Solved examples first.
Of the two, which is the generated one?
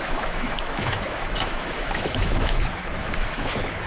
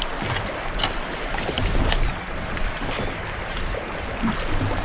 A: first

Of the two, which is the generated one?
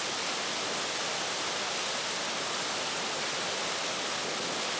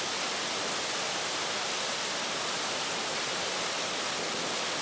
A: second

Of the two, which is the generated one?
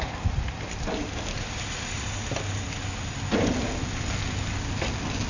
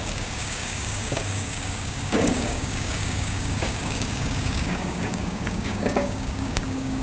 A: second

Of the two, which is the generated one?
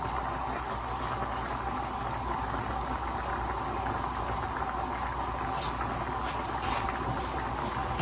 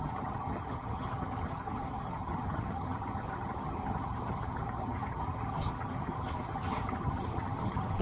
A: second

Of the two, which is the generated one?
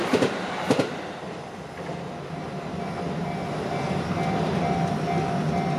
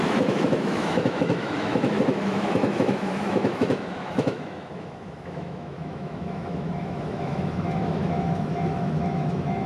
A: second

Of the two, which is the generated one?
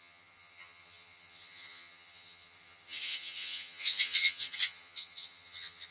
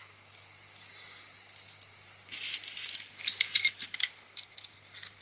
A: first